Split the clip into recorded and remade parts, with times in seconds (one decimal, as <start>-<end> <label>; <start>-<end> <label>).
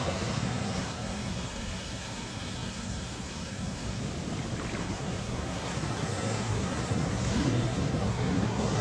0.0-4.0 remade; 4.0-4.8 recorded; 4.8-8.8 remade